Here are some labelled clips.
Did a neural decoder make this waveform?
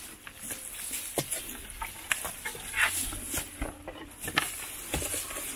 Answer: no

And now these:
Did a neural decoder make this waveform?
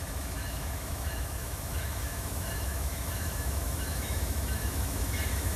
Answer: yes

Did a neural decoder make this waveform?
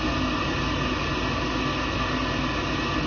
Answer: no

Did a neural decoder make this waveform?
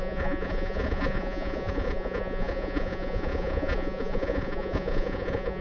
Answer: yes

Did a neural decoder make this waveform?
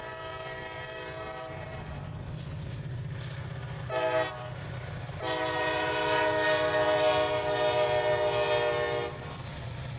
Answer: no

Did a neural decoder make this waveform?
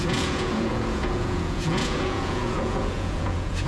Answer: yes